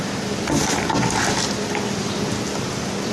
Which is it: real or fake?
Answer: real